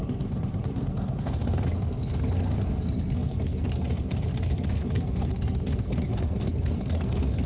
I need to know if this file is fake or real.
fake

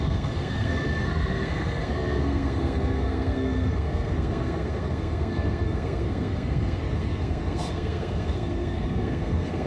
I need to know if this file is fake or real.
fake